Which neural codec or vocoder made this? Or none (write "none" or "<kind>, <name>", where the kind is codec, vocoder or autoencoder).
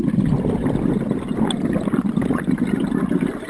none